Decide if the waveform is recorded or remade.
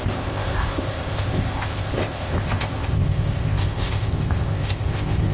remade